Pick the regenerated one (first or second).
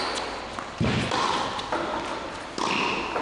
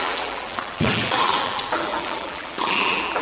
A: second